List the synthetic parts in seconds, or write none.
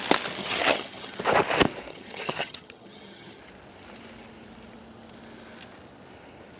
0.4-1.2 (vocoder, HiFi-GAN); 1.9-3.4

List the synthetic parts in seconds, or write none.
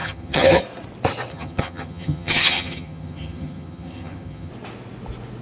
0.0-0.6 (vocoder, HiFi-GAN); 1.3-4.5